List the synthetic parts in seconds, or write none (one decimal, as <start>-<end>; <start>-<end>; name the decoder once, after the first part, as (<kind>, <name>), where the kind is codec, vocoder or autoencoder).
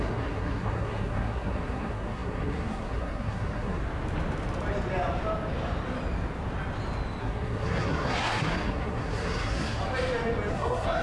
0.0-3.8 (codec, SNAC); 7.2-9.8; 10.5-11.0